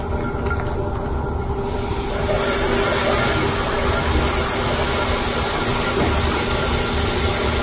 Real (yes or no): yes